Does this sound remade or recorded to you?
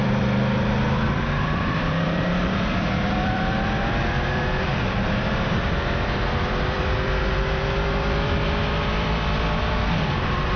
remade